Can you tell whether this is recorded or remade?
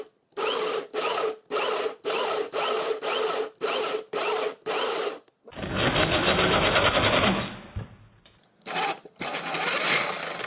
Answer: recorded